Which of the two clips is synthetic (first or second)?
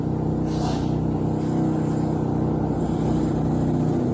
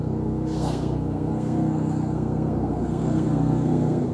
second